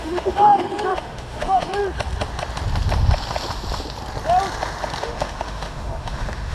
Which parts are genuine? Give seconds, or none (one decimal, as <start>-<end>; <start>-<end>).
1.8-5.0